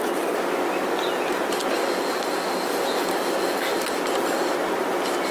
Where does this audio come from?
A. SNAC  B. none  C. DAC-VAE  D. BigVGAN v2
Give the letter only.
B